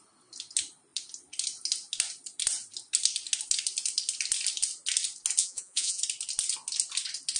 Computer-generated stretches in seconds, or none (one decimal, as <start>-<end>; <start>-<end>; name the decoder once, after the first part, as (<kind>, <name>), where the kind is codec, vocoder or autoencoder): 5.4-6.0 (vocoder, Vocos)